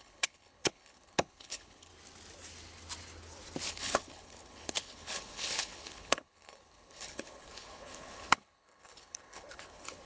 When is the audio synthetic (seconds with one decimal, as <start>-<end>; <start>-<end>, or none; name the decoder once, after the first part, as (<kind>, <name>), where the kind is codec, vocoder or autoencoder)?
0.0-1.9 (codec, HILCodec); 3.7-10.1